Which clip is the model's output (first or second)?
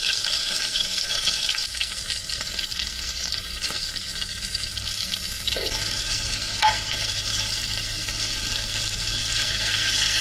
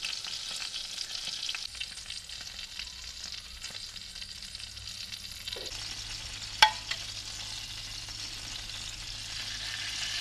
first